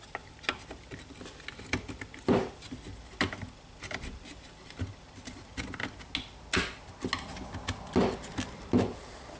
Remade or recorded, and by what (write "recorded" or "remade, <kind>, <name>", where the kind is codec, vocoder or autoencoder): recorded